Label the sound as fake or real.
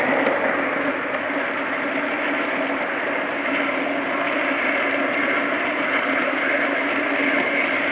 real